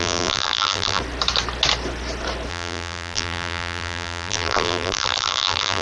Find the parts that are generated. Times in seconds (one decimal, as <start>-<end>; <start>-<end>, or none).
0.0-1.0; 2.5-5.8